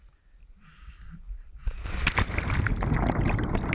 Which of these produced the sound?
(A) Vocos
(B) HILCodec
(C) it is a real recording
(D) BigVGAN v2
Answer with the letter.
C